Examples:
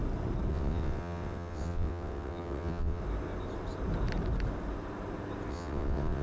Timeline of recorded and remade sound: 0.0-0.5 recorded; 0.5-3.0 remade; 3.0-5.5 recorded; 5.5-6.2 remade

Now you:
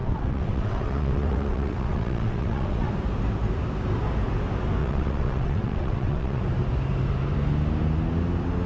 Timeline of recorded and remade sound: 0.0-2.9 remade; 2.9-4.8 recorded; 4.8-6.4 remade; 6.4-8.7 recorded

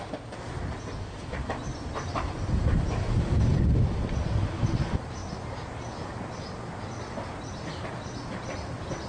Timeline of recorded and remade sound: 0.0-9.1 recorded

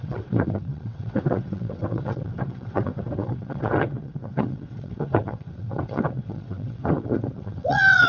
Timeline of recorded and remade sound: 0.0-8.1 remade

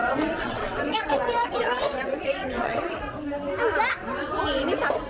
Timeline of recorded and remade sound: 0.0-3.0 remade; 3.0-5.1 recorded

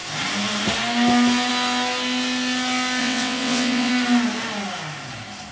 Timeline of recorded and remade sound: 0.0-3.0 recorded; 3.0-3.9 remade; 3.9-5.5 recorded

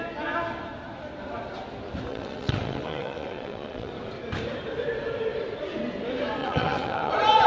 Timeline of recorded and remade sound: 0.0-2.1 recorded; 2.1-3.9 remade; 3.9-6.4 recorded; 6.4-7.1 remade; 7.1-7.5 recorded